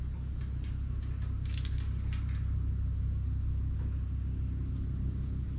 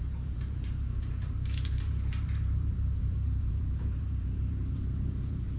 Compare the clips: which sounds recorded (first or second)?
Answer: first